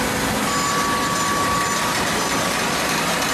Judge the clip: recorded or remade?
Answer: recorded